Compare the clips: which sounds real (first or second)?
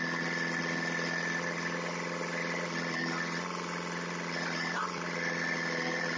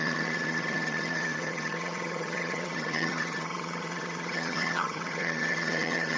first